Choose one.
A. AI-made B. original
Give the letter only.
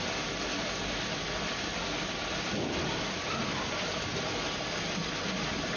B